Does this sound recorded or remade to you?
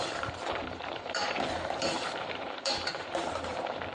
remade